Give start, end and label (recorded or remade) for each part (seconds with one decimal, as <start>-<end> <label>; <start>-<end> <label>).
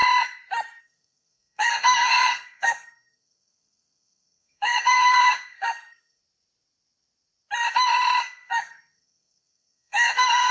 0.0-0.8 recorded; 0.8-6.2 remade; 6.2-8.2 recorded; 8.2-10.5 remade